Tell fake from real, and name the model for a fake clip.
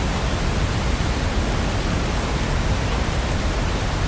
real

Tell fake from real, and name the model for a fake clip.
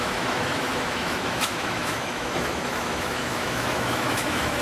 fake, autoencoder, DAC-VAE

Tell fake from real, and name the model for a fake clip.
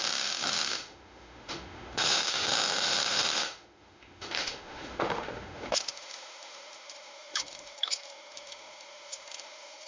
fake, autoencoder, DAC-VAE